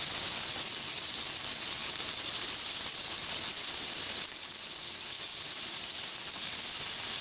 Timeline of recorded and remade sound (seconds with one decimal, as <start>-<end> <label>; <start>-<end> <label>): 0.0-1.8 recorded; 1.8-2.9 remade; 2.9-5.3 recorded; 5.3-6.1 remade; 6.1-7.2 recorded

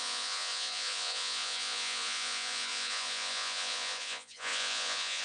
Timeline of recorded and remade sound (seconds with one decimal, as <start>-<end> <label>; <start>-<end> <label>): 0.0-5.2 remade